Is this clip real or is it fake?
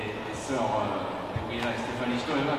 real